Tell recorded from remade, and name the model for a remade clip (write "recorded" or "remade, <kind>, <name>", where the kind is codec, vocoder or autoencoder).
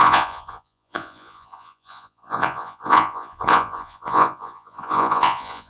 remade, vocoder, Vocos